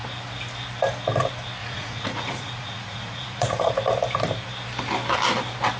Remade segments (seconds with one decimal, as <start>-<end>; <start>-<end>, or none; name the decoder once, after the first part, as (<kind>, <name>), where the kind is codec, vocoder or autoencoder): 1.6-3.7 (vocoder, Vocos)